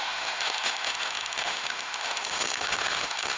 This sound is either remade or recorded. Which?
remade